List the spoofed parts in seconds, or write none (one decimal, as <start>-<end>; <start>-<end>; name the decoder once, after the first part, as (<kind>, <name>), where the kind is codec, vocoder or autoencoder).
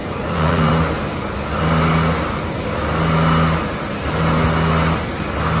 0.0-0.7 (vocoder, Vocos)